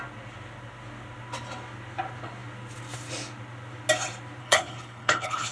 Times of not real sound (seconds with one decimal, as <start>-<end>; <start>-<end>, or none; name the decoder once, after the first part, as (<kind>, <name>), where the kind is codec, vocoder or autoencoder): 4.4-5.5 (codec, HILCodec)